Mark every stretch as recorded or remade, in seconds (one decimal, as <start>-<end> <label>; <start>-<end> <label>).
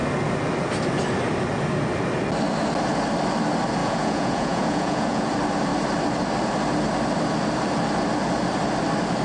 0.0-3.8 recorded; 3.8-5.3 remade; 5.3-9.2 recorded